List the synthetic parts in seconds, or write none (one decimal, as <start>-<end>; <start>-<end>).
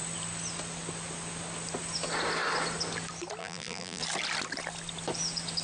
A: 3.4-4.0